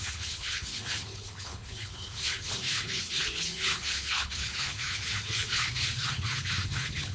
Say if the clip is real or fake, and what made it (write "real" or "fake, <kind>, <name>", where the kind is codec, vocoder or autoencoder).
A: fake, codec, HILCodec